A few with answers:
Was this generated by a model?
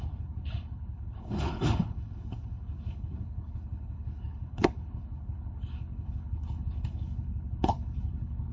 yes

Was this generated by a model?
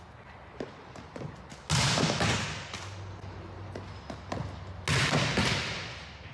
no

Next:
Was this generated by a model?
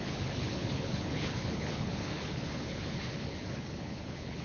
yes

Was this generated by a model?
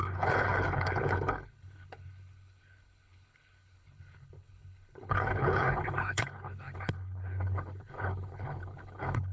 yes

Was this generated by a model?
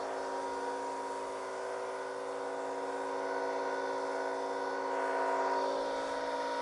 no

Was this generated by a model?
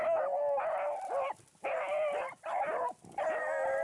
no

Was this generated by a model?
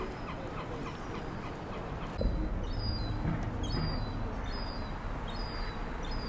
no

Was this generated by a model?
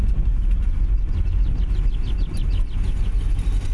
no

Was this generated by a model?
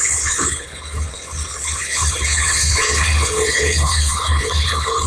yes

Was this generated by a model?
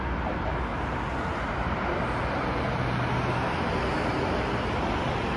no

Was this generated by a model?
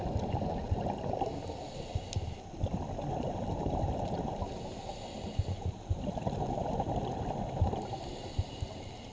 no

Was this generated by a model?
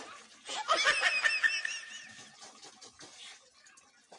no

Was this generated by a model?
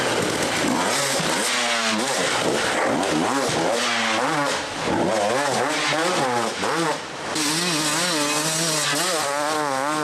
no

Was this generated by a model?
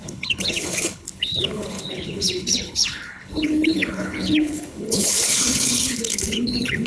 yes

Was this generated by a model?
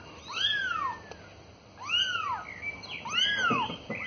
no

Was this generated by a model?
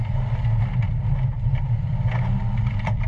no